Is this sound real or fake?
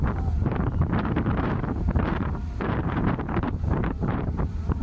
fake